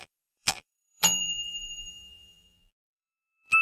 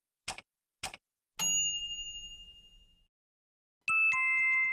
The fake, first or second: first